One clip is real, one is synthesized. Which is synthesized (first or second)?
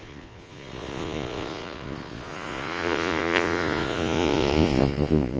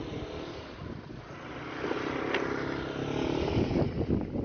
first